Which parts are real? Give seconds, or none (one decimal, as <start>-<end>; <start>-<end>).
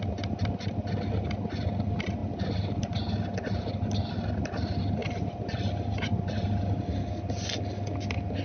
0.0-8.4